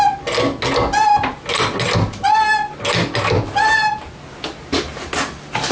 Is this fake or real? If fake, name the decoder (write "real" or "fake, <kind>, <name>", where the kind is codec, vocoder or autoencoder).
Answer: real